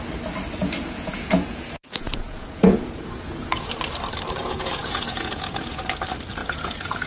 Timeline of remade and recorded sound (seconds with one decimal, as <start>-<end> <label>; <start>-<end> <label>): 0.0-0.6 recorded; 0.6-3.7 remade; 3.7-4.4 recorded; 4.4-5.8 remade; 5.8-6.4 recorded; 6.4-7.1 remade